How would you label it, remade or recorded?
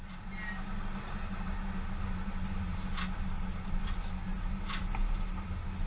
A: recorded